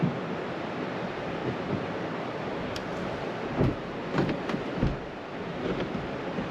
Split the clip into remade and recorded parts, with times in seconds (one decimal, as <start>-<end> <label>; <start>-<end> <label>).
0.0-6.5 recorded